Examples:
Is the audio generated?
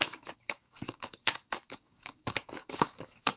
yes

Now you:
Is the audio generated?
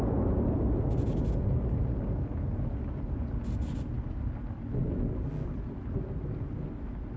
no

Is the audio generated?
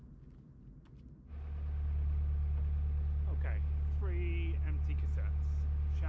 no